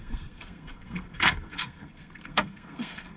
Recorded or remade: remade